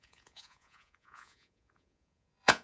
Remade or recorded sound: remade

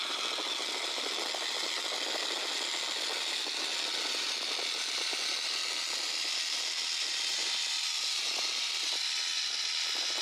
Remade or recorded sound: recorded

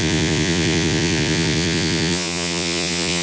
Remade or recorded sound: remade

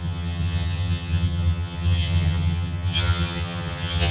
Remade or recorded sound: remade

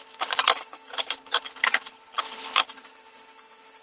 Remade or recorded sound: recorded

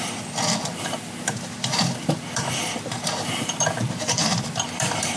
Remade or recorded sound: remade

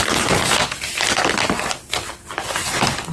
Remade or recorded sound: recorded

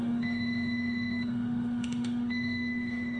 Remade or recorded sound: remade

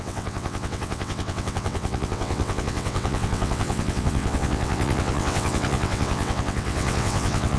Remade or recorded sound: remade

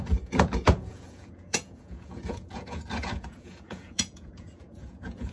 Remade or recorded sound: remade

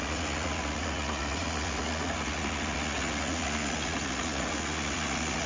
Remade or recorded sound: remade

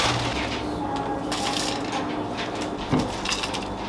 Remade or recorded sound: recorded